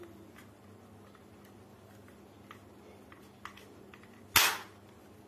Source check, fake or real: real